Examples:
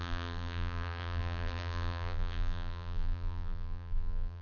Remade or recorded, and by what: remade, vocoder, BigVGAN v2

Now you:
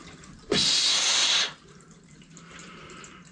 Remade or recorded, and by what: remade, vocoder, BigVGAN v2